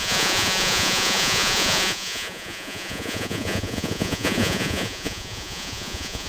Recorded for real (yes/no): no